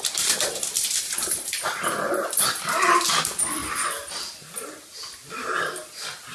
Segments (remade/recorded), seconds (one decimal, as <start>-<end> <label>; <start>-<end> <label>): 0.0-3.6 remade; 3.6-5.3 recorded; 5.3-6.3 remade